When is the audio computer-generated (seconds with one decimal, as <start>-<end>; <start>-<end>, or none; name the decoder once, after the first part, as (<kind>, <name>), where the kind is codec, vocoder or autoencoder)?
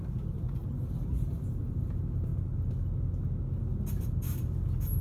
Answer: 0.0-2.3 (vocoder, BigVGAN v2); 3.9-5.0